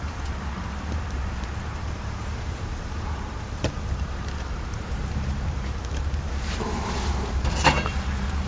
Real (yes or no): no